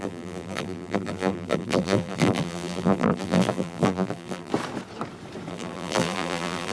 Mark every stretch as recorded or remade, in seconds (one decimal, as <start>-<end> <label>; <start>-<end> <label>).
0.0-4.5 remade; 4.5-5.5 recorded; 5.5-6.7 remade